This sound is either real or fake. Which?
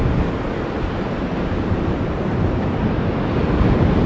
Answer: real